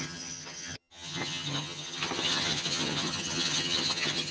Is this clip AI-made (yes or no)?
yes